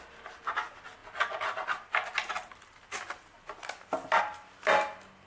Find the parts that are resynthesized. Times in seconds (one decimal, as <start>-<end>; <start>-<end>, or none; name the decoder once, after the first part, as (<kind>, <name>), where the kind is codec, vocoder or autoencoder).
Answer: none